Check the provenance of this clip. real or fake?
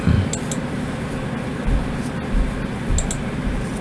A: real